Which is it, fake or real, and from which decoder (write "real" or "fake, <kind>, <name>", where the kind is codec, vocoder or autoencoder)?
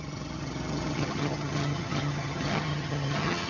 fake, vocoder, HiFi-GAN